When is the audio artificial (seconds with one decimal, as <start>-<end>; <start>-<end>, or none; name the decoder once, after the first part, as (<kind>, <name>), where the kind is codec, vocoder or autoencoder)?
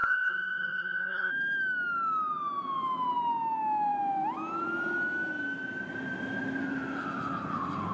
0.0-1.3 (codec, SNAC)